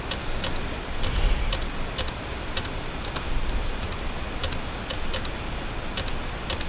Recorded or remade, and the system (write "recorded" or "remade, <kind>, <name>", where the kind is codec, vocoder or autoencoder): recorded